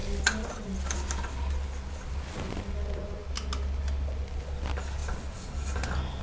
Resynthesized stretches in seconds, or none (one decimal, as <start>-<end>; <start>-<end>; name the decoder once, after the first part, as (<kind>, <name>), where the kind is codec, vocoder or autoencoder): none